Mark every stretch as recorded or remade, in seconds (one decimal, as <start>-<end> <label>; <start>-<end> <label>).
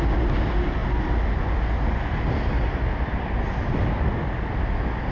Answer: 0.0-5.1 recorded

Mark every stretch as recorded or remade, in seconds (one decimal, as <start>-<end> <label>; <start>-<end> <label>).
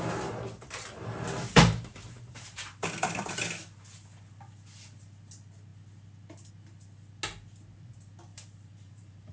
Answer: 0.0-1.5 recorded; 1.5-2.9 remade; 2.9-8.3 recorded; 8.3-9.3 remade